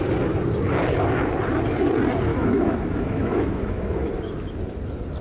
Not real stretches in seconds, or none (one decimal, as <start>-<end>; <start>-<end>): 2.3-4.1